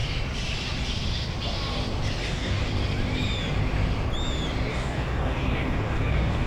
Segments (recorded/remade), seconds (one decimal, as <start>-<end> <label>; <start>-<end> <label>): 0.0-2.2 recorded; 2.2-2.7 remade; 2.7-4.7 recorded; 4.7-6.5 remade